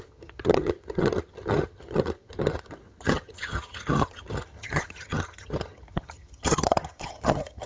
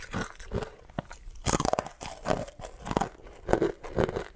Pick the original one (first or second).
second